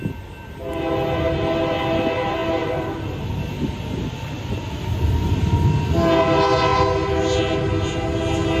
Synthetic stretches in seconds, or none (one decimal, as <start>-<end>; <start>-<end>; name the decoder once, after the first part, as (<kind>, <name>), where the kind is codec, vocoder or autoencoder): none